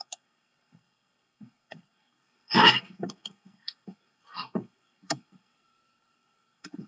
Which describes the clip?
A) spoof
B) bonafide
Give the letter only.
A